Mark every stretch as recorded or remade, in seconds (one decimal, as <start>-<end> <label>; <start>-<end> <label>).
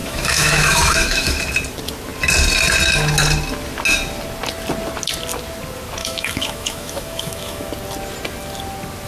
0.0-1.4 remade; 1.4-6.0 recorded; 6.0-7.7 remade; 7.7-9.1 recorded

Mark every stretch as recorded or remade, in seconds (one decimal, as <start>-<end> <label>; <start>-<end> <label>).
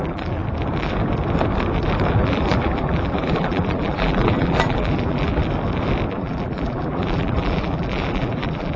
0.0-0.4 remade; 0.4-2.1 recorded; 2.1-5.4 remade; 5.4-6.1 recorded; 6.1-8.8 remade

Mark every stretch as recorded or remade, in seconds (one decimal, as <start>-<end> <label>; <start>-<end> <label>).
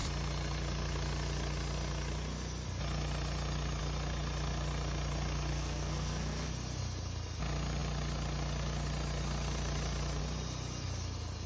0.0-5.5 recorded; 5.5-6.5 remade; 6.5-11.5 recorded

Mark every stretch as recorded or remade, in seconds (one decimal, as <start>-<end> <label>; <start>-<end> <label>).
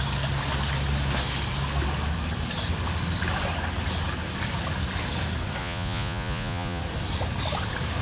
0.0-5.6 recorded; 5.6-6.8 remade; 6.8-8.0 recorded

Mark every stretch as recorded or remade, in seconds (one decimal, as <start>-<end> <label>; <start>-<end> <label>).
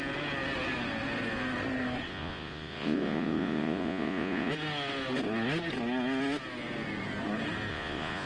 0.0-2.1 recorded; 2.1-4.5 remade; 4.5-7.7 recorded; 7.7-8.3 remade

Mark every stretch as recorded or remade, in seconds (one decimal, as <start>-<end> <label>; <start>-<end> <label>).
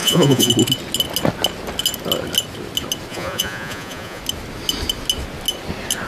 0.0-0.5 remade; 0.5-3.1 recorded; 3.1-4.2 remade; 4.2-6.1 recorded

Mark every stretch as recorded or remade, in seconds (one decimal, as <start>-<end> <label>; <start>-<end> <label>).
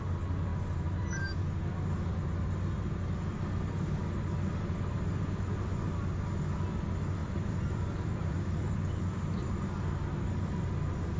0.0-7.2 recorded; 7.2-9.6 remade; 9.6-11.2 recorded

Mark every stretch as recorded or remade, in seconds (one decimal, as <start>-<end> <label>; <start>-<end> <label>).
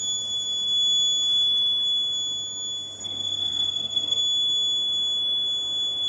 0.0-3.0 recorded; 3.0-4.2 remade; 4.2-6.1 recorded